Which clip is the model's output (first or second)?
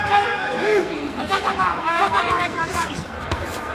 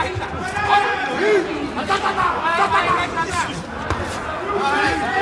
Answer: first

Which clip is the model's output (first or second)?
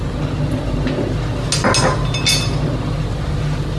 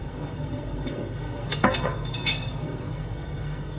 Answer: second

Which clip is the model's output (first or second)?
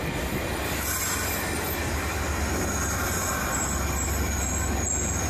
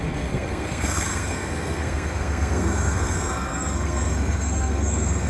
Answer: second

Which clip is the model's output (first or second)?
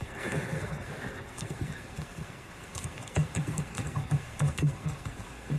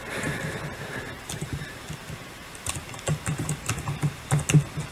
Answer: first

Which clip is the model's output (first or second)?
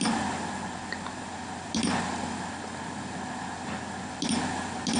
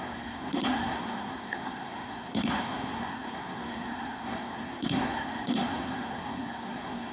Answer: second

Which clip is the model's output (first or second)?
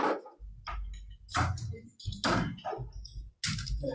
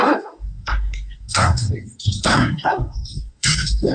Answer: second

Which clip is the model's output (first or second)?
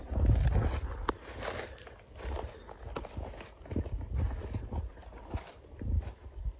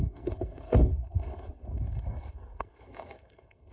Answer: second